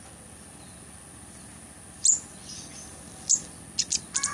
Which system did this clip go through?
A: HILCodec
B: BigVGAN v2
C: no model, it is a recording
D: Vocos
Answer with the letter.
C